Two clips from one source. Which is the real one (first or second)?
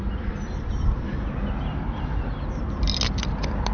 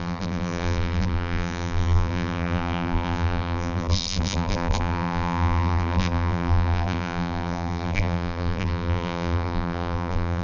first